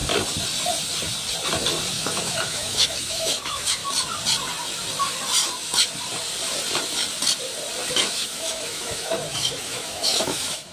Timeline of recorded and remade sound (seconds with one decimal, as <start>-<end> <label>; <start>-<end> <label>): 0.0-1.9 recorded; 1.9-3.8 remade; 3.8-7.9 recorded; 7.9-10.7 remade